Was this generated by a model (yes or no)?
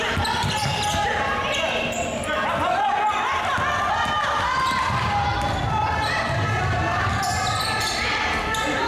no